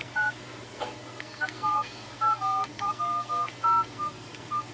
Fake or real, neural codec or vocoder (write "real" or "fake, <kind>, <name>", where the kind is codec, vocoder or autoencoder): fake, codec, SNAC